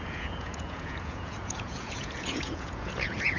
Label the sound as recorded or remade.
remade